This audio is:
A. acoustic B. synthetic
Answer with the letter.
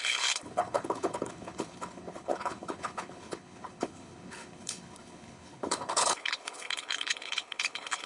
B